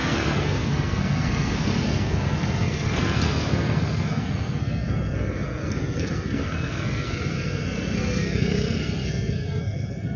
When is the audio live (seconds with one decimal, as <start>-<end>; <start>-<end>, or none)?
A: none